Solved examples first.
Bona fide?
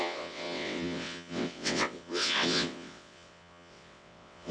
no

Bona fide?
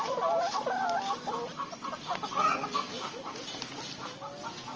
yes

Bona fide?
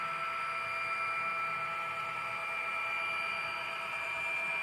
yes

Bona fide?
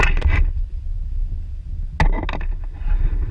yes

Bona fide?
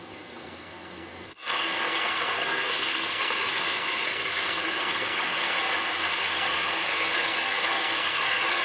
no